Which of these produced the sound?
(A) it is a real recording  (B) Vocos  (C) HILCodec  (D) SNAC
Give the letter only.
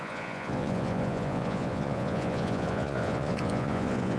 B